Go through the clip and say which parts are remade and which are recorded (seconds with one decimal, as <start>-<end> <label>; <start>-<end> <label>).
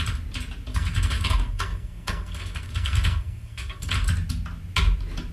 0.0-0.7 recorded; 0.7-3.9 remade; 3.9-5.3 recorded